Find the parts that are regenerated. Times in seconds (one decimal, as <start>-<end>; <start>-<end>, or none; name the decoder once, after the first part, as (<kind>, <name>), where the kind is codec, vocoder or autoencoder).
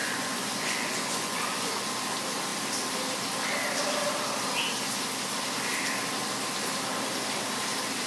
0.0-1.8 (vocoder, Vocos)